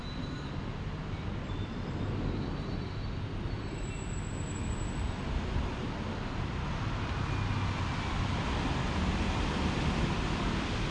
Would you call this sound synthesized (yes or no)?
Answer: no